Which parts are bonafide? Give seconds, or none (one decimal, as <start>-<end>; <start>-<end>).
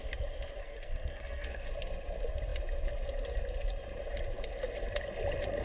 0.0-0.6; 1.7-5.6